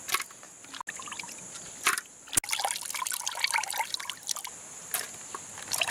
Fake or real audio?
real